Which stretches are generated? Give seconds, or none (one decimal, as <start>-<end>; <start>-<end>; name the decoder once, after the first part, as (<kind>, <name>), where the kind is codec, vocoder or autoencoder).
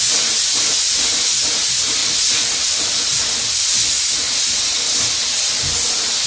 2.0-3.2 (vocoder, BigVGAN v2)